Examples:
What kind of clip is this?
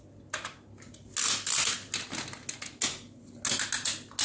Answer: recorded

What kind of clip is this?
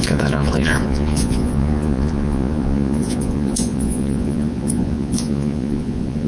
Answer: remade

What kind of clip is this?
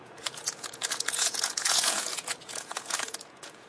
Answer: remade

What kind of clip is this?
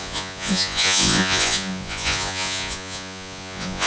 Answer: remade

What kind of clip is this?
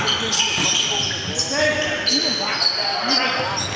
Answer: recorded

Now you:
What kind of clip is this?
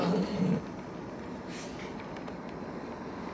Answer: recorded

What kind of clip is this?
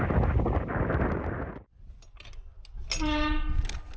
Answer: recorded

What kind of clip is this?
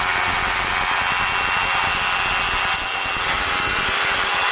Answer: recorded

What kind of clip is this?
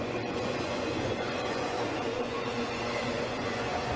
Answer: remade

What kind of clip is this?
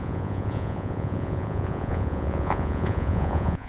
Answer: remade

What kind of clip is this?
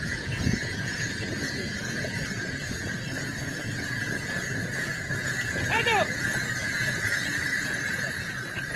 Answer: remade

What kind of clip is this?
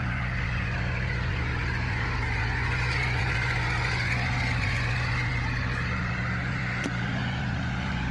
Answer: remade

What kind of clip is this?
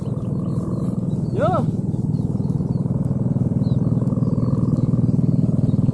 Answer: recorded